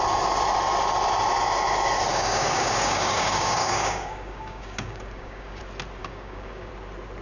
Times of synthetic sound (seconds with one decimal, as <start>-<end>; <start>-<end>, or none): 2.1-5.6; 6.0-6.7